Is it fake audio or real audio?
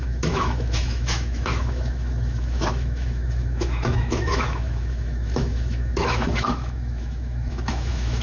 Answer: fake